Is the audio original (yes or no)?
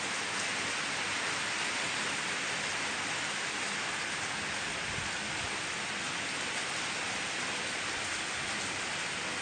yes